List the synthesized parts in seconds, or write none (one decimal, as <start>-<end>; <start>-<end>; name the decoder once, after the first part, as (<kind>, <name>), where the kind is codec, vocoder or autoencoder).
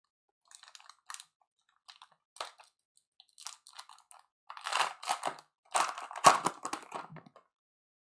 none